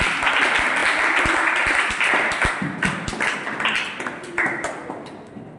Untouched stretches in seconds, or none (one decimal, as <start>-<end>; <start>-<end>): 0.0-5.6